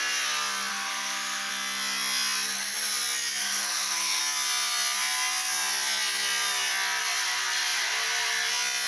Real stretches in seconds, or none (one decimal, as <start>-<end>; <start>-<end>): 0.0-0.7; 1.5-3.4; 4.2-8.9